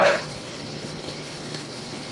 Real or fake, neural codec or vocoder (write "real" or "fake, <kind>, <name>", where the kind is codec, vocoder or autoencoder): fake, codec, HILCodec